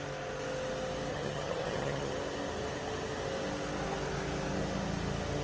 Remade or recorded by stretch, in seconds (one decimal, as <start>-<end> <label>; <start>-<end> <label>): 0.0-1.1 recorded; 1.1-2.1 remade; 2.1-5.4 recorded